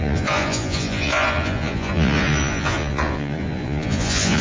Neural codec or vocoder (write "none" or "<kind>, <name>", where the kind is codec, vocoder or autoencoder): vocoder, Vocos